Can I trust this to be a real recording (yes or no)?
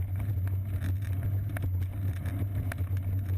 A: yes